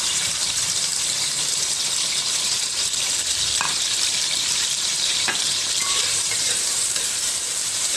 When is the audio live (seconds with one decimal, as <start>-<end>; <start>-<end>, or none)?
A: 0.9-2.0